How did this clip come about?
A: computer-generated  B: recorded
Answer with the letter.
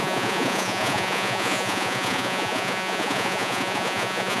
A